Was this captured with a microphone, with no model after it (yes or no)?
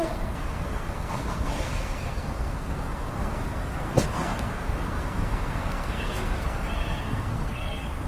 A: no